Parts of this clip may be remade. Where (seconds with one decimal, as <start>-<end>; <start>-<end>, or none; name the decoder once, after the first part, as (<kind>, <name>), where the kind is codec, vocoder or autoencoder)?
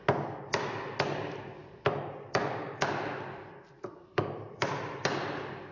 none